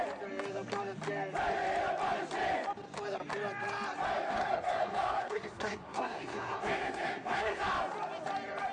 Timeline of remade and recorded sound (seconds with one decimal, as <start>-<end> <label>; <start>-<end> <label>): 0.0-4.4 recorded; 4.4-7.6 remade; 7.6-8.7 recorded